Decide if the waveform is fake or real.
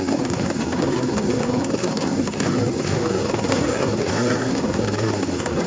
fake